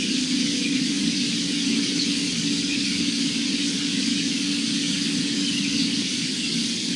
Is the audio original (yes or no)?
no